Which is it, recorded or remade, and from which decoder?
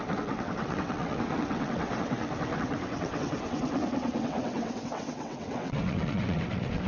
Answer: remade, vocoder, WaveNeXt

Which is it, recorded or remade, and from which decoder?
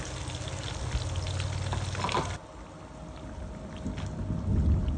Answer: recorded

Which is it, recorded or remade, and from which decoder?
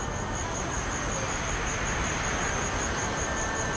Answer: recorded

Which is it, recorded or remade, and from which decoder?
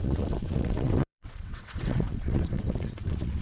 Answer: remade, vocoder, WaveNeXt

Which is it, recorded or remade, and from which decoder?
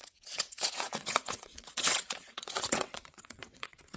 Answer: remade, vocoder, WaveNeXt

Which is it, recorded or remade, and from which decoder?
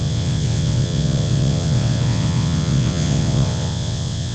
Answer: remade, vocoder, WaveNeXt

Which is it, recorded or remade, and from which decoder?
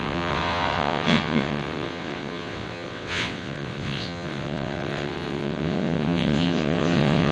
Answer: remade, vocoder, WaveNeXt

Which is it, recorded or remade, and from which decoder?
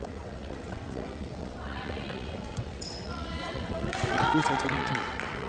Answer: remade, vocoder, WaveNeXt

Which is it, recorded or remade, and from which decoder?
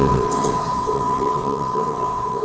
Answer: remade, vocoder, WaveNeXt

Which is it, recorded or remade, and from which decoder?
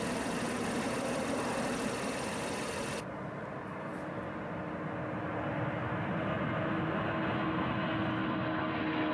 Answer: recorded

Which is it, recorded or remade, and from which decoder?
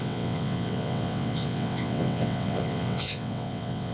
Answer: remade, vocoder, WaveNeXt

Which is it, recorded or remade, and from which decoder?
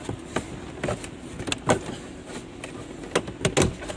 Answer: recorded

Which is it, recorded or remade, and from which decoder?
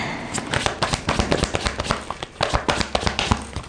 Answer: recorded